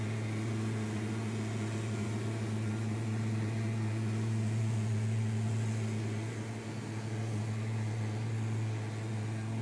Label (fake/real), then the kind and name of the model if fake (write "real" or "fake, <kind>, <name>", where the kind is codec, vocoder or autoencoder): real